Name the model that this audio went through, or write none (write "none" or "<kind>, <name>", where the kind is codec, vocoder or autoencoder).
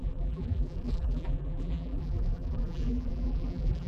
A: vocoder, BigVGAN v2